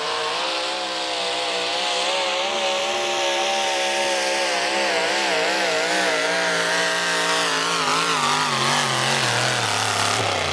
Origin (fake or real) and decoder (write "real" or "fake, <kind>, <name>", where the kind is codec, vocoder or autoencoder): real